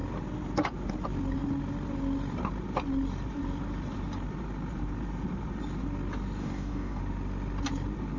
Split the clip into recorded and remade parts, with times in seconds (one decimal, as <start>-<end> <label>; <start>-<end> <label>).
0.0-6.4 recorded; 6.4-7.0 remade; 7.0-8.2 recorded